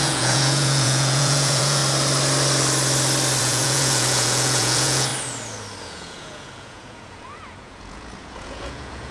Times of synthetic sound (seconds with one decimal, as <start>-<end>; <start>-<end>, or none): 0.0-1.8; 3.4-5.1; 5.8-9.1